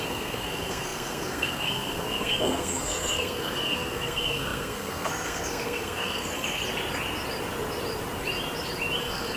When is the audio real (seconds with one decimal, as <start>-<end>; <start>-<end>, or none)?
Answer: 6.6-9.0